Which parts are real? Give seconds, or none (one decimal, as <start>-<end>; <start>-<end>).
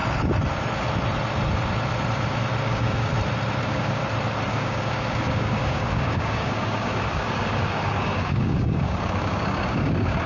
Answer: 0.0-2.6; 3.1-3.6; 4.0-4.5